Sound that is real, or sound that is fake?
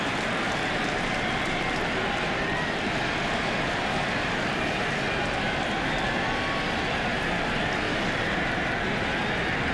real